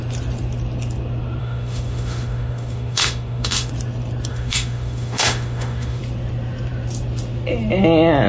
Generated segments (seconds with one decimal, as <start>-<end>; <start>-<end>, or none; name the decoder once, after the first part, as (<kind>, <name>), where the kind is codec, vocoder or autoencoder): 1.4-3.7 (autoencoder, DAC-VAE); 4.3-6.0